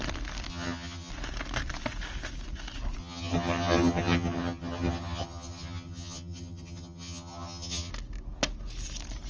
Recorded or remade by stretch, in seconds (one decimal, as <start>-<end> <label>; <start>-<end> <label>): 0.0-0.5 recorded; 0.5-1.1 remade; 1.1-3.0 recorded; 3.0-7.9 remade; 7.9-9.3 recorded